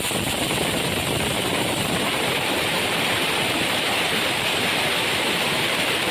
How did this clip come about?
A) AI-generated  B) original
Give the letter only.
A